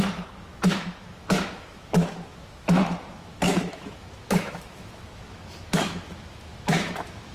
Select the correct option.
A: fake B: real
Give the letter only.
A